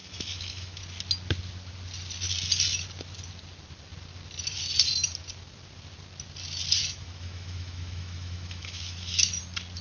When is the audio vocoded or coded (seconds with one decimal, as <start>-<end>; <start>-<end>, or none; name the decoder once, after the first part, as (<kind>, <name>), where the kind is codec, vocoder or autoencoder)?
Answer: 0.0-0.8 (autoencoder, DAC-VAE); 6.8-9.4